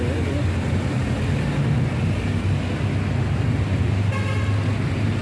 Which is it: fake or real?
real